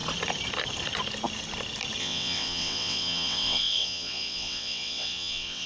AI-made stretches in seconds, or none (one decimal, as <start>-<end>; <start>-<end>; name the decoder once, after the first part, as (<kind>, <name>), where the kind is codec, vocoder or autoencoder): 2.0-5.7 (vocoder, WaveNeXt)